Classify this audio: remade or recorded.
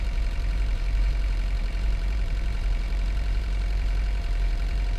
remade